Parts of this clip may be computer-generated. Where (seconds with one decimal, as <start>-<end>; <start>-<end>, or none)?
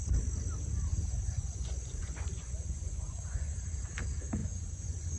0.9-3.6; 4.4-5.2